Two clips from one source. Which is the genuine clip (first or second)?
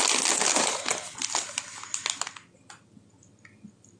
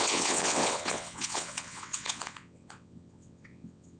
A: first